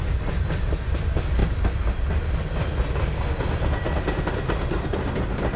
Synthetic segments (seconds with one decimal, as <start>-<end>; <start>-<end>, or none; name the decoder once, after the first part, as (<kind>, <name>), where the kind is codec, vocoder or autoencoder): none